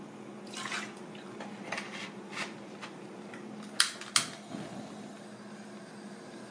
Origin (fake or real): real